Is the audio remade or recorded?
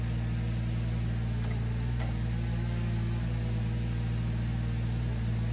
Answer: recorded